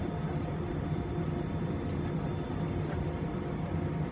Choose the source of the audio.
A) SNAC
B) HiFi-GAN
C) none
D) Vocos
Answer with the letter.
C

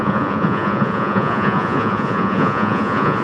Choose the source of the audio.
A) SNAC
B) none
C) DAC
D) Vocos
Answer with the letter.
D